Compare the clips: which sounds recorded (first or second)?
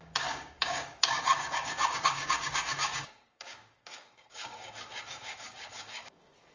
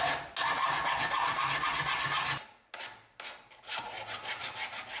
second